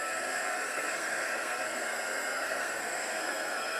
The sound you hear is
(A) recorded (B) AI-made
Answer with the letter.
B